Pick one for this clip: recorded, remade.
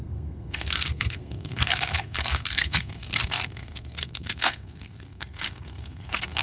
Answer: remade